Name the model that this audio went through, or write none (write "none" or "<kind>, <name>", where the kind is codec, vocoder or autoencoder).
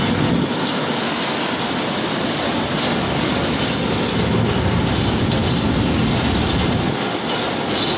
none